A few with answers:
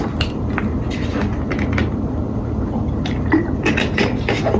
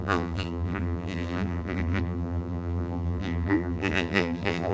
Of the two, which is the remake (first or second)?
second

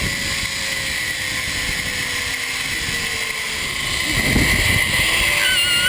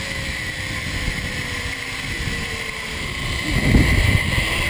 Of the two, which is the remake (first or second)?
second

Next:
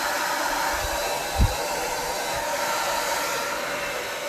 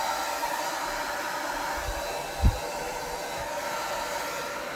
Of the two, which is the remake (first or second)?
first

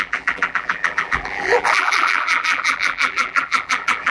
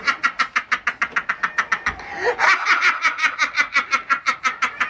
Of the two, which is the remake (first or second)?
first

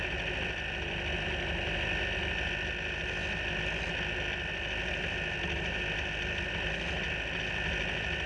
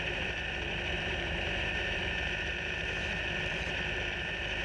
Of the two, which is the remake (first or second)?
second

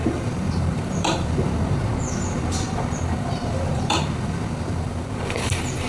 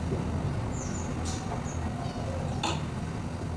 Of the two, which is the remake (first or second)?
first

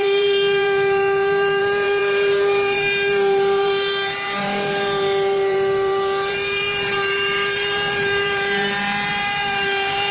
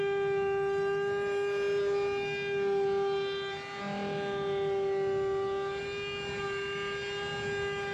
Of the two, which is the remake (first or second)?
first